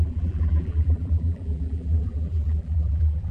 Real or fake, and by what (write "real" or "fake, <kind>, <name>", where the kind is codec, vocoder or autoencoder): fake, vocoder, BigVGAN v2